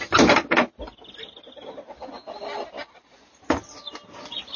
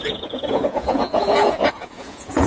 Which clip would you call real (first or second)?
first